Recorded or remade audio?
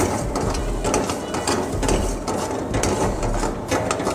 recorded